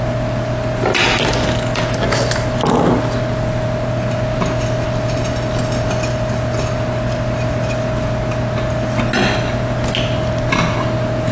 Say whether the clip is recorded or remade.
recorded